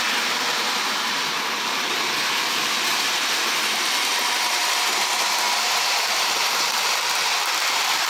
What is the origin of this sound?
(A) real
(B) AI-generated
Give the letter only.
B